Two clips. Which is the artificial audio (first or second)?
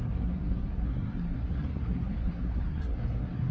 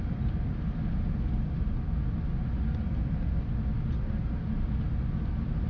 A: first